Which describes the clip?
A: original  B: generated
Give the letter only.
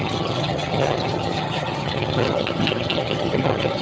B